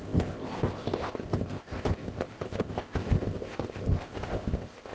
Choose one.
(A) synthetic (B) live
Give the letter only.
A